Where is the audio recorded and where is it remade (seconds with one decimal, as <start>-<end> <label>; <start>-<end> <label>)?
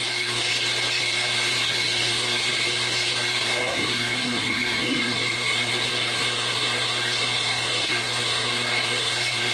0.0-0.5 remade; 0.5-1.0 recorded; 1.0-9.5 remade